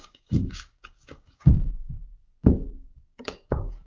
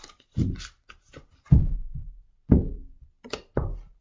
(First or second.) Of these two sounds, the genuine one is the second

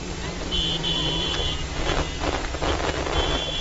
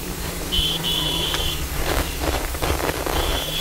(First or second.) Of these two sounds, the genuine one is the first